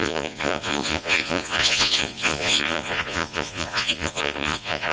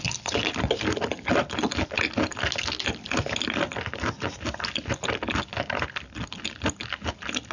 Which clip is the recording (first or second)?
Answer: second